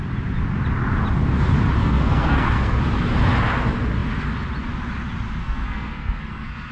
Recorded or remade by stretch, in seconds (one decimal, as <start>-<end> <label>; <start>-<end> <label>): 0.0-1.8 recorded; 1.8-2.8 remade; 2.8-5.4 recorded; 5.4-6.7 remade